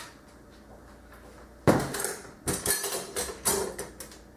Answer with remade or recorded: recorded